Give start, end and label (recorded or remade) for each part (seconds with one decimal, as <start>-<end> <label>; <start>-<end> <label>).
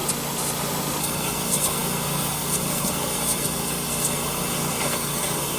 0.0-1.0 recorded; 1.0-5.6 remade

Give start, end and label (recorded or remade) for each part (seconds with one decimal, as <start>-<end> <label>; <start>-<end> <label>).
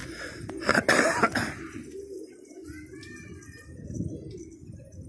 0.0-5.1 recorded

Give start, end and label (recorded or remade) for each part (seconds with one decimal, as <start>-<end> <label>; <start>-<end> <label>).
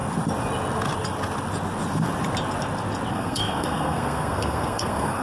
0.0-3.1 recorded; 3.1-5.2 remade